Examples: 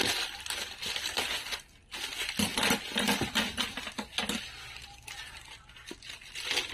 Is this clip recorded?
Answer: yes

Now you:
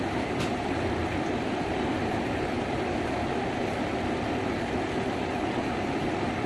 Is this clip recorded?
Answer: no